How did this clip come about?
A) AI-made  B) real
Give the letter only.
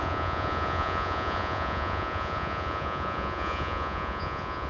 A